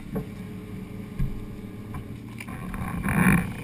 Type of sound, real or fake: real